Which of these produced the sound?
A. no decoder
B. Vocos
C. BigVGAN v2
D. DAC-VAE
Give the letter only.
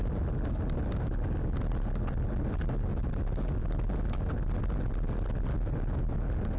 A